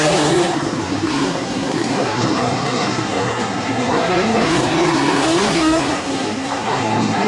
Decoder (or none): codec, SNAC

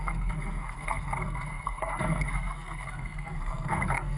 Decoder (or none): codec, SNAC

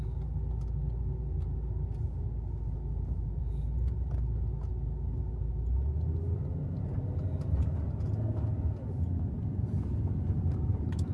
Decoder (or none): none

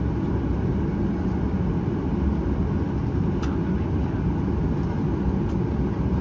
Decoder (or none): none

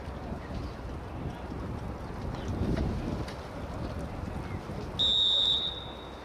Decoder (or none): none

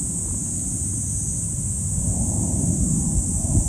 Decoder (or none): none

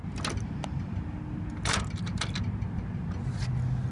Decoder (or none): none